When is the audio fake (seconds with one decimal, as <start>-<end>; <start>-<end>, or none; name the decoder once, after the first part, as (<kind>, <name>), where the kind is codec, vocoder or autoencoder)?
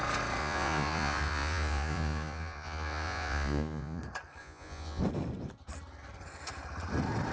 0.4-4.0 (vocoder, Vocos); 4.4-5.0